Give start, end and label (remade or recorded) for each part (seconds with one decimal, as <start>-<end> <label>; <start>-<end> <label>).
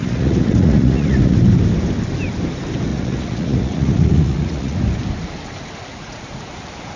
0.0-1.4 remade; 1.4-2.9 recorded; 2.9-4.8 remade; 4.8-5.9 recorded; 5.9-6.5 remade; 6.5-7.0 recorded